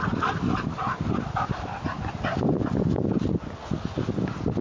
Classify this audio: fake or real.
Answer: real